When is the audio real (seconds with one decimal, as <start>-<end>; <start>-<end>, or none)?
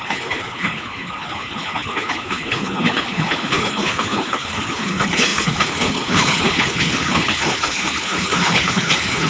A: none